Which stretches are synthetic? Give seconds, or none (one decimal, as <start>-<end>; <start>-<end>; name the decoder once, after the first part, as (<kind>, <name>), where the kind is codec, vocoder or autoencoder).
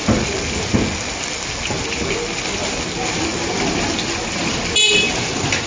none